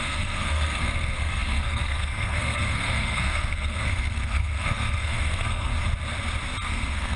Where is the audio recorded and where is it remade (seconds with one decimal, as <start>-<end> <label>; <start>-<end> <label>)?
0.0-5.7 remade; 5.7-6.6 recorded; 6.6-7.2 remade